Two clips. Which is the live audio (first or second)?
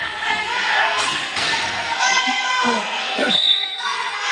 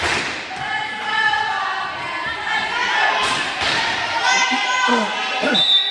second